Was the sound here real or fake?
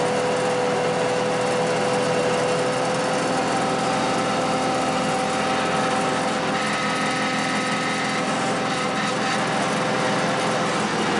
real